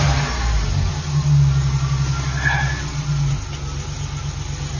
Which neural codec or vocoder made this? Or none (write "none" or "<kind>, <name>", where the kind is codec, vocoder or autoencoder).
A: none